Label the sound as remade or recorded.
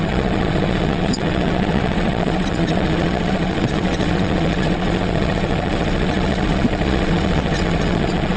remade